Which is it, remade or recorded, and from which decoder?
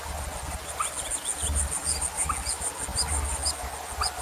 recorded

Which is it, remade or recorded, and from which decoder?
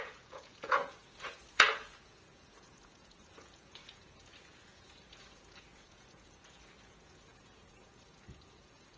remade, vocoder, Vocos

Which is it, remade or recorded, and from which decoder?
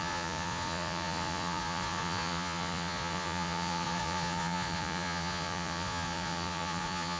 remade, vocoder, Vocos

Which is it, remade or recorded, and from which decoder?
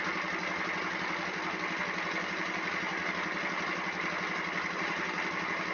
recorded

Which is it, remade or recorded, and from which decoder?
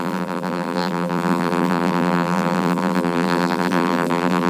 remade, vocoder, BigVGAN v2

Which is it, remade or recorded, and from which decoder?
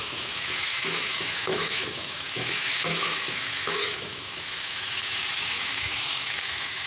remade, autoencoder, DAC-VAE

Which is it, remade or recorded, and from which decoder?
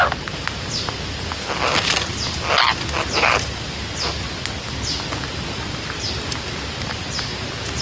recorded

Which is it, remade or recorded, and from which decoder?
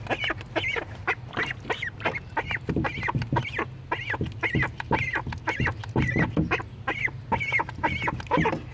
recorded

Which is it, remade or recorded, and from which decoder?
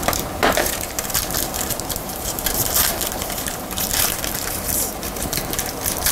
remade, vocoder, BigVGAN v2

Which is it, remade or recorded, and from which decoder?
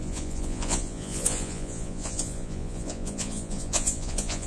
remade, vocoder, Vocos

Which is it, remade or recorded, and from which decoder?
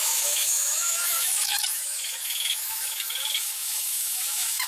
remade, autoencoder, DAC-VAE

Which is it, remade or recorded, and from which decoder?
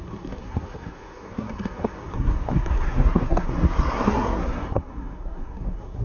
remade, codec, SNAC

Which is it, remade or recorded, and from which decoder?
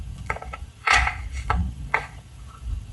remade, vocoder, Vocos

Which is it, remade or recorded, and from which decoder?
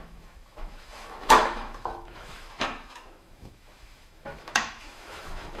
remade, autoencoder, DAC-VAE